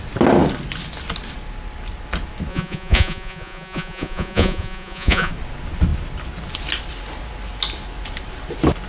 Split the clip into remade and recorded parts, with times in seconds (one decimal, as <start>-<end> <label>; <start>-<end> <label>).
0.0-2.5 recorded; 2.5-5.3 remade; 5.3-8.9 recorded